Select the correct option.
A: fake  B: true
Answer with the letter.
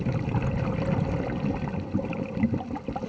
B